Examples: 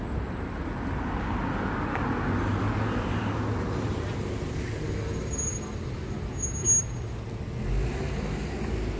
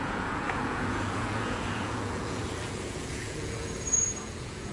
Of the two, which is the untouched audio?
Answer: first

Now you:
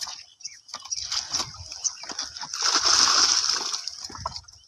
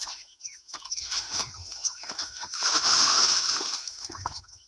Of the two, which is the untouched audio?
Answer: first